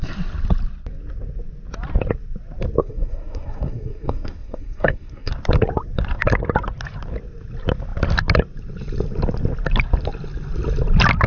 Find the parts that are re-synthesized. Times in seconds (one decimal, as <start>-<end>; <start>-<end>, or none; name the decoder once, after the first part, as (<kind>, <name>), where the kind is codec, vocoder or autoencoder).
2.8-5.3 (codec, SNAC)